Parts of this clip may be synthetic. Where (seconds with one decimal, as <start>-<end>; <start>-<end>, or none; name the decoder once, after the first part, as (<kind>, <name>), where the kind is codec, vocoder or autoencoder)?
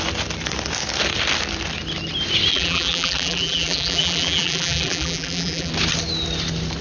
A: 2.5-5.7 (vocoder, BigVGAN v2)